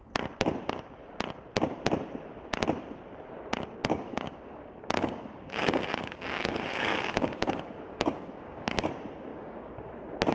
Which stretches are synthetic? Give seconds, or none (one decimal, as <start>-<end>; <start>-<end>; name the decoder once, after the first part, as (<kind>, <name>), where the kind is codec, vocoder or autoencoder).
3.8-8.9 (codec, DAC); 9.3-9.9